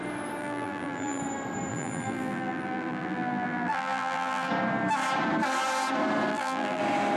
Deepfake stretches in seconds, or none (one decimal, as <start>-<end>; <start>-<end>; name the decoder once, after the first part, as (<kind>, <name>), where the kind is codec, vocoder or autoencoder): 0.4-1.2 (vocoder, BigVGAN v2); 1.7-4.5; 6.3-6.8

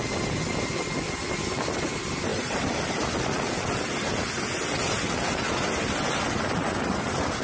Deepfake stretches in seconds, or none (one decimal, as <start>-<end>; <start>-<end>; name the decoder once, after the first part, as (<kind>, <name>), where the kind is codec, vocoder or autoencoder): 2.3-3.8 (vocoder, BigVGAN v2)

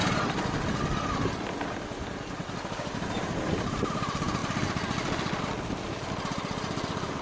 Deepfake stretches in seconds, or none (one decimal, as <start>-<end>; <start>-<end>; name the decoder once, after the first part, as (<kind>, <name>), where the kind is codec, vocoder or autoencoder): 2.4-3.8 (vocoder, BigVGAN v2)

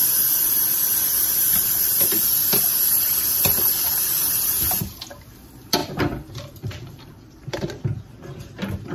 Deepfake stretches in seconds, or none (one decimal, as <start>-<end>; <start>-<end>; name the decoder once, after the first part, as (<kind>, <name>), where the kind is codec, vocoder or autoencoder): 0.0-4.7 (vocoder, BigVGAN v2); 5.8-7.5

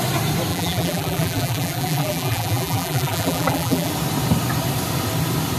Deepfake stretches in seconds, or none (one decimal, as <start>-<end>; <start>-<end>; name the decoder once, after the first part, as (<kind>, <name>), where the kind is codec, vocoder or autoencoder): 0.5-3.9 (vocoder, BigVGAN v2)

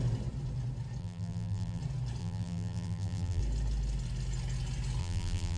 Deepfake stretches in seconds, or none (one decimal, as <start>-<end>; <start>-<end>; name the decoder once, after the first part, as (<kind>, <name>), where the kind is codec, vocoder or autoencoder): 1.0-1.8 (vocoder, BigVGAN v2); 2.2-3.4; 5.0-5.6

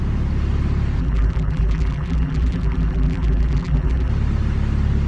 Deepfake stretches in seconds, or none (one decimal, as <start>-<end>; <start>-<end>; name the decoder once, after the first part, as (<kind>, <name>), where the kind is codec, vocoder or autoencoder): 1.0-4.1 (vocoder, BigVGAN v2)